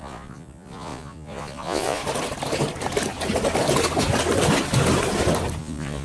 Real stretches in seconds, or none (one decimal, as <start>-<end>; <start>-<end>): 2.0-5.6

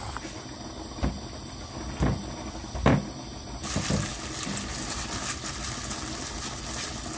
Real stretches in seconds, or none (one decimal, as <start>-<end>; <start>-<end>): 0.0-7.2

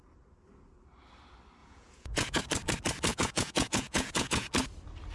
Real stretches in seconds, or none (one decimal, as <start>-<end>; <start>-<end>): 0.0-1.6; 2.4-3.1; 4.5-5.1

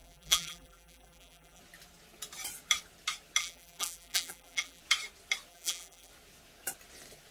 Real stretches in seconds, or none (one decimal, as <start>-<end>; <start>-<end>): 1.6-3.4; 4.8-5.5; 6.1-7.3

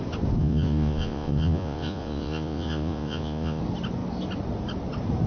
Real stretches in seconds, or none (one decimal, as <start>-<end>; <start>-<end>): 0.0-0.4; 3.6-5.3

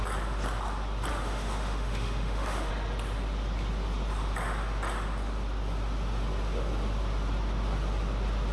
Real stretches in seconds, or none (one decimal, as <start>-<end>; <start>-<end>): 0.0-1.1; 2.7-8.5